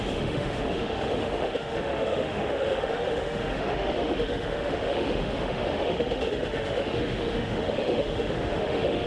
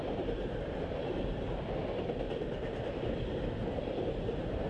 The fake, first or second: first